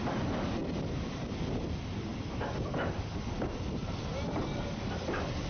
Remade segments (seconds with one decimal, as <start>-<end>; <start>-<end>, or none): none